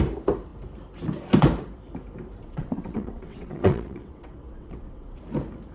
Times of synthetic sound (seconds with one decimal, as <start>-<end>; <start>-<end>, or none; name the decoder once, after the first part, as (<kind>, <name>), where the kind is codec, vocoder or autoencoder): 2.4-5.2 (vocoder, WaveNeXt)